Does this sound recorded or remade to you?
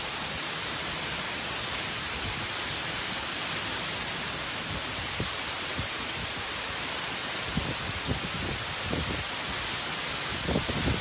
recorded